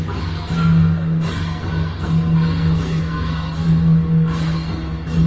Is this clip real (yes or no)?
no